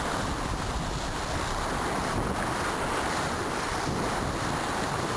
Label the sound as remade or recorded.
recorded